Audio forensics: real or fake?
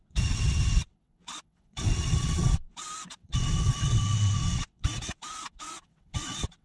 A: fake